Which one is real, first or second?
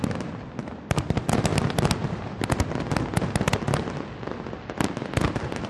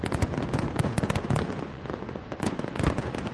first